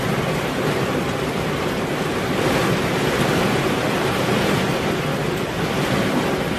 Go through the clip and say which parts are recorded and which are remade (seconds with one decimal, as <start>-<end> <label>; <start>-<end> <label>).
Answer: 0.0-6.6 recorded